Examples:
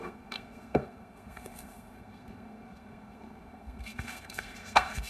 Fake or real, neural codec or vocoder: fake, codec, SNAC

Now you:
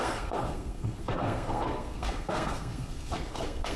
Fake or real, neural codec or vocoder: fake, codec, SNAC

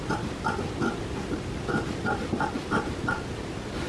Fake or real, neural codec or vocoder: real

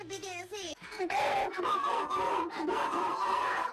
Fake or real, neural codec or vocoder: fake, codec, SNAC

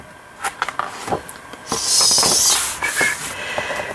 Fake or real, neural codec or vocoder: real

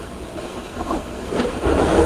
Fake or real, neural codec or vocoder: fake, codec, SNAC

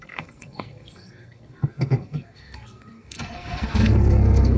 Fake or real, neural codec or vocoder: fake, codec, SNAC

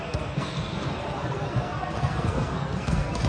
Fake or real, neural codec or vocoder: fake, codec, SNAC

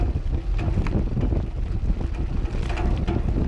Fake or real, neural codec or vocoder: real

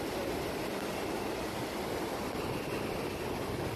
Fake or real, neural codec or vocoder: real